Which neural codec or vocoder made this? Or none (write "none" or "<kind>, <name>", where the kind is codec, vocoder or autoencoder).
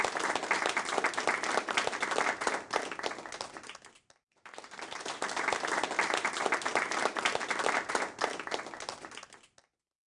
none